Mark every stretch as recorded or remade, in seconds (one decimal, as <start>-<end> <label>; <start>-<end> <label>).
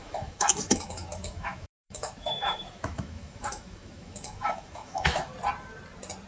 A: 0.0-5.3 remade; 5.3-6.3 recorded